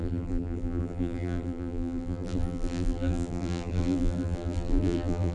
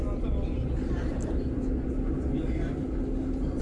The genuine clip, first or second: second